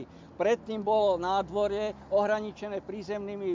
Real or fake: real